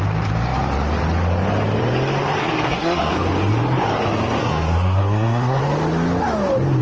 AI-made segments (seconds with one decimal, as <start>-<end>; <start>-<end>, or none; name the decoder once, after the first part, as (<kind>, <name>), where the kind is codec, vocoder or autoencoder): 2.4-3.1 (codec, SNAC); 4.4-5.6